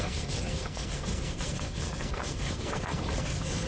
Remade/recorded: remade